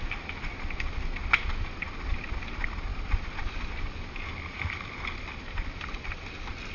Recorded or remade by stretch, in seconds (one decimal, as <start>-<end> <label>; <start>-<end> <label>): 0.0-6.7 recorded